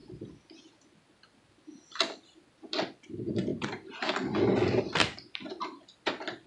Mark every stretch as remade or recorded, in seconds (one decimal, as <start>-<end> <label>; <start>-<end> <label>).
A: 0.0-6.5 recorded